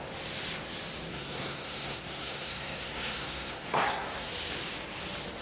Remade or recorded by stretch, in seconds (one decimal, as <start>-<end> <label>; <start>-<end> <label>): 0.0-1.1 recorded; 1.1-4.3 remade; 4.3-5.4 recorded